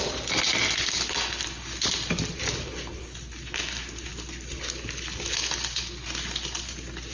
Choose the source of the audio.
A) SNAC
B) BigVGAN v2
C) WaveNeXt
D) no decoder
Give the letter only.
D